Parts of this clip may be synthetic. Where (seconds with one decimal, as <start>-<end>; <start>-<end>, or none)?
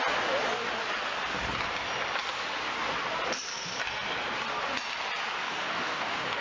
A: 5.4-6.4